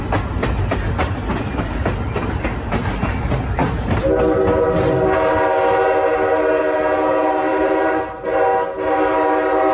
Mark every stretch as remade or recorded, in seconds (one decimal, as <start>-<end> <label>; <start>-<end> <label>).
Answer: 0.0-7.5 recorded; 7.5-8.0 remade; 8.0-9.7 recorded